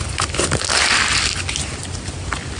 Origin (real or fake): real